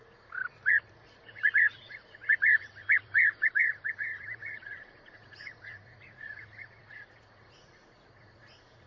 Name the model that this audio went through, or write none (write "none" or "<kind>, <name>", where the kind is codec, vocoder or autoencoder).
vocoder, Vocos